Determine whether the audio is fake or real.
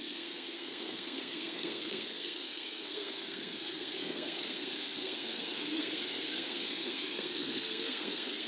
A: fake